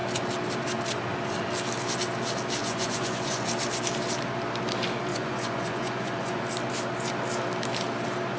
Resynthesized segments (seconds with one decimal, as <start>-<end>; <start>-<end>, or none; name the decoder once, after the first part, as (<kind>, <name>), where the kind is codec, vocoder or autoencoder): 2.6-3.5 (vocoder, Vocos); 5.1-6.4